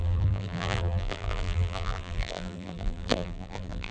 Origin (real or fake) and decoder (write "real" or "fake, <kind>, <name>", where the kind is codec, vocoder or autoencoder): fake, vocoder, BigVGAN v2